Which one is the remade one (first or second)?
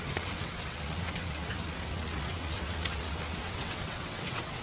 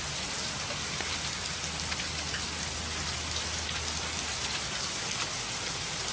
first